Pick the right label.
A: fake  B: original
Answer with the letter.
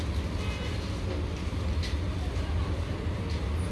B